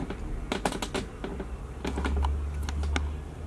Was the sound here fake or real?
real